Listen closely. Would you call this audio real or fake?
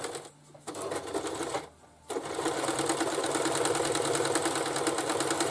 real